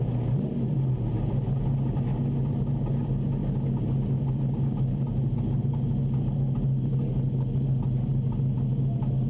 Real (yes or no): yes